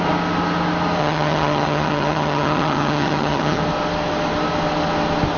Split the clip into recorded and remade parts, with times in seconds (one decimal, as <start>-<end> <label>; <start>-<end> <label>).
0.0-1.0 recorded; 1.0-3.6 remade; 3.6-5.4 recorded